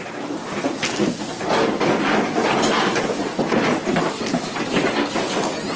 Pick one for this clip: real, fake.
real